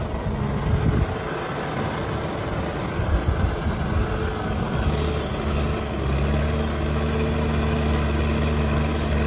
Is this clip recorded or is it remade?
recorded